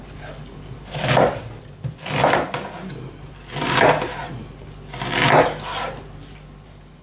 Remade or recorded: recorded